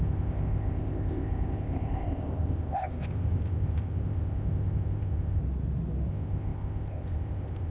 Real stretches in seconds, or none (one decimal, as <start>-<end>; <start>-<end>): 5.4-6.1